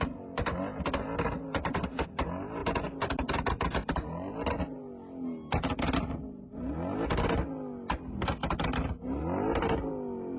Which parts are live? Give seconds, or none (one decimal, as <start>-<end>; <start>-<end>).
0.0-10.4